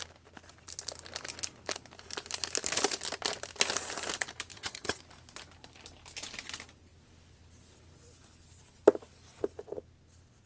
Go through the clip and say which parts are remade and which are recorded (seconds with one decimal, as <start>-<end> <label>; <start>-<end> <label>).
0.0-4.5 recorded; 4.5-5.0 remade; 5.0-10.5 recorded